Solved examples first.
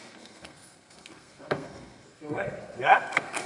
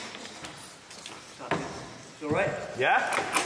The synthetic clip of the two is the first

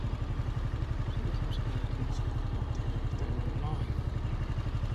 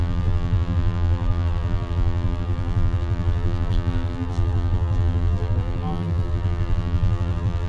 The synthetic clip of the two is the second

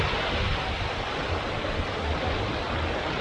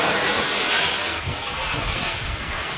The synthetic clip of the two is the second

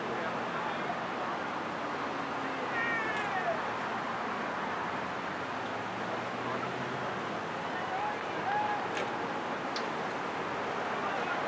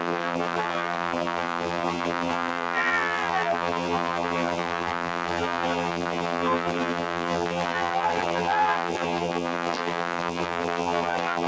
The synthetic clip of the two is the second